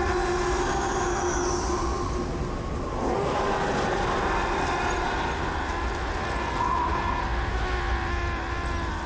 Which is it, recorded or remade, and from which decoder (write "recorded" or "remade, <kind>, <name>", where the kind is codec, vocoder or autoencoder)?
recorded